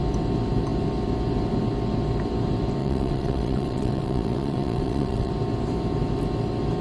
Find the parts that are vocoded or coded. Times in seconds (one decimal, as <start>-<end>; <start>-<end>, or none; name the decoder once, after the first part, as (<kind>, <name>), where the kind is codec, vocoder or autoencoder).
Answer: 2.8-5.3 (vocoder, WaveNeXt)